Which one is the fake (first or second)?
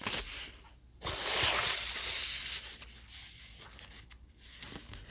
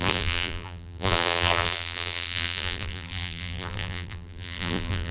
second